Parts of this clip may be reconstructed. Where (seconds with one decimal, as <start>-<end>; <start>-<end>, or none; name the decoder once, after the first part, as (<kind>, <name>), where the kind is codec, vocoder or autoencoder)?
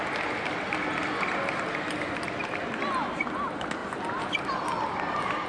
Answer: none